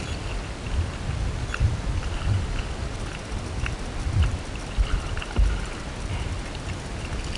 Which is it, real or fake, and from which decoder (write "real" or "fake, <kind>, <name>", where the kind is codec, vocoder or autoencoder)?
real